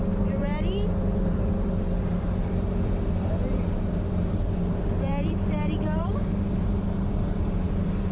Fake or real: fake